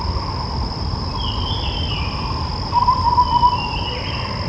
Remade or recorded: recorded